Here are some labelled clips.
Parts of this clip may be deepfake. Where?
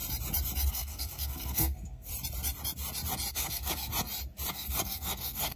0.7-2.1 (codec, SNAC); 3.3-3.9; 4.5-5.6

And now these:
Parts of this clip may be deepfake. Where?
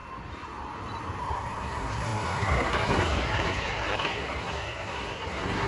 1.2-5.7 (codec, SNAC)